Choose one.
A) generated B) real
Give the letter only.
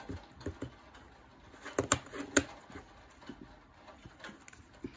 B